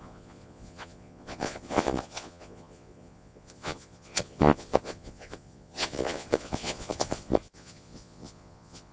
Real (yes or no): no